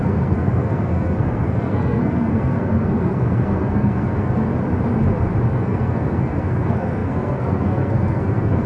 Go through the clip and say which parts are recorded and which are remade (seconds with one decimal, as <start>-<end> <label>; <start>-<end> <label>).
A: 0.0-4.5 remade; 4.5-5.5 recorded; 5.5-8.7 remade